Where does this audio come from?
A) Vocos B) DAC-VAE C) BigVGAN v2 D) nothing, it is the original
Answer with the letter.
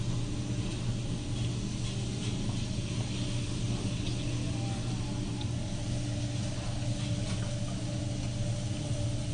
D